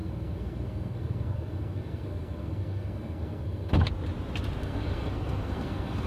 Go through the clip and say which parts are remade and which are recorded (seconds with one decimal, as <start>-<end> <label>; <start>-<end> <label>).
0.0-3.7 remade; 3.7-4.6 recorded; 4.6-6.1 remade